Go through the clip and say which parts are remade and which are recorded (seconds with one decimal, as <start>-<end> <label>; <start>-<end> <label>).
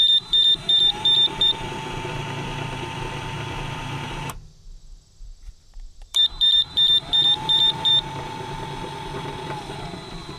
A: 0.0-7.9 remade; 7.9-9.7 recorded; 9.7-10.4 remade